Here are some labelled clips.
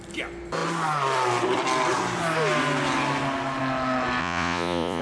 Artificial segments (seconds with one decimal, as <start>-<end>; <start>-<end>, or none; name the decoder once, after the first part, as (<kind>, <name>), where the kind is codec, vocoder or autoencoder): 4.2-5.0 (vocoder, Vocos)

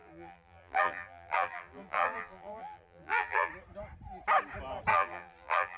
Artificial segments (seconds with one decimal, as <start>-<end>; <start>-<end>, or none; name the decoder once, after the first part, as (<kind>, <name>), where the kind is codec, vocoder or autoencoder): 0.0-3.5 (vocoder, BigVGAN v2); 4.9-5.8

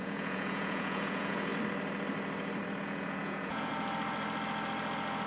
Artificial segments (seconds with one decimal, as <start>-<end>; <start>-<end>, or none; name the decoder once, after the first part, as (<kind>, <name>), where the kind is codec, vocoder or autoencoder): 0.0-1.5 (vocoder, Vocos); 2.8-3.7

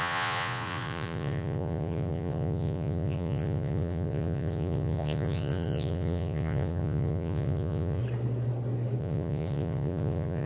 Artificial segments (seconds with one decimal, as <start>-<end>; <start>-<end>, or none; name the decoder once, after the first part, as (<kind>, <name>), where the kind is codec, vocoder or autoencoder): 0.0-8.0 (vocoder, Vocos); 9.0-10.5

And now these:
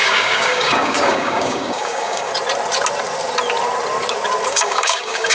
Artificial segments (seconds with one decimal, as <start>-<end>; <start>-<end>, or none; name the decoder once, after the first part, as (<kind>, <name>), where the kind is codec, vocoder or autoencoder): 0.0-2.3 (codec, DAC); 4.5-5.3

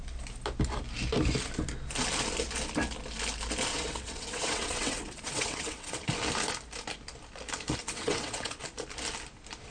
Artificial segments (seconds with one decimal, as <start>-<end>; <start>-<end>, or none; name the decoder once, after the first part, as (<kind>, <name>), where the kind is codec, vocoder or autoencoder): 3.7-6.1 (vocoder, WaveNeXt); 7.8-8.6